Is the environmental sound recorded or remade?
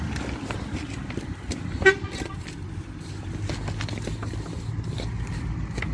recorded